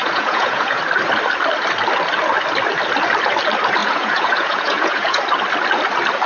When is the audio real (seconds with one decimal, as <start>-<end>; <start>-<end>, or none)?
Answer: 0.8-3.8; 5.2-6.3